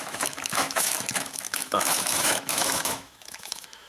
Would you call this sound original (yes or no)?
no